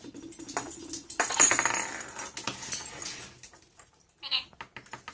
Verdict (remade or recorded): recorded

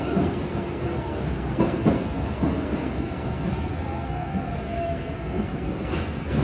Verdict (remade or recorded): remade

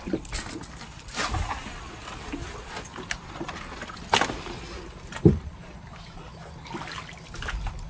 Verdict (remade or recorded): recorded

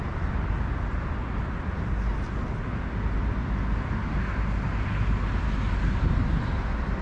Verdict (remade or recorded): recorded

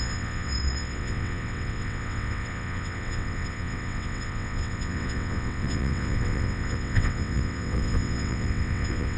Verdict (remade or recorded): remade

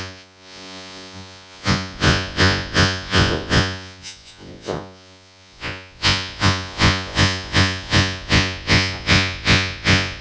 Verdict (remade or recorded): remade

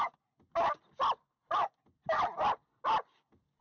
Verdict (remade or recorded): recorded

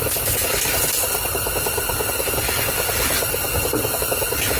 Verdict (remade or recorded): recorded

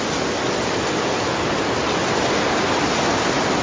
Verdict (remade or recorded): recorded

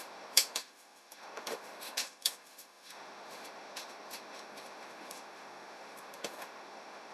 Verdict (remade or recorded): remade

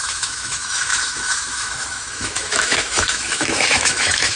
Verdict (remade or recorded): remade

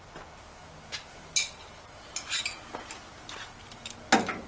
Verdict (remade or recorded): recorded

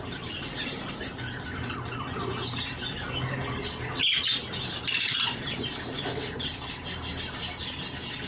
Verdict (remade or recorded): recorded